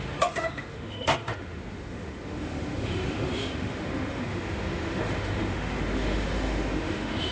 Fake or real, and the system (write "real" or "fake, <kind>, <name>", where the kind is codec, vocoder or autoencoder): fake, autoencoder, DAC-VAE